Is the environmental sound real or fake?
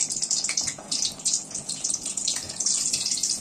fake